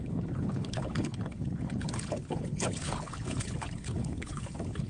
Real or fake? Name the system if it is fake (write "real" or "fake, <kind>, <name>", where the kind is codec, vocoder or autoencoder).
fake, codec, HILCodec